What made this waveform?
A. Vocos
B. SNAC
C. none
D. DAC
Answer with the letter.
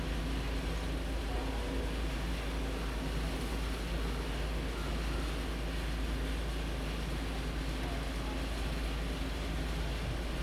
C